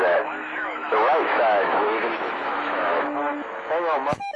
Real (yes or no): no